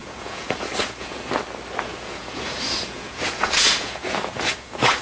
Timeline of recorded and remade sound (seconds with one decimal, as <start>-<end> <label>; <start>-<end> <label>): 0.0-1.3 remade; 1.3-1.9 recorded; 1.9-5.0 remade